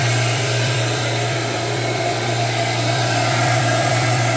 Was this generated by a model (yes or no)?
yes